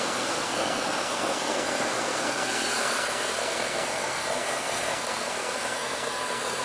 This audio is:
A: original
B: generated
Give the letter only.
B